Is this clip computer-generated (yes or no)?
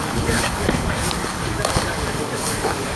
yes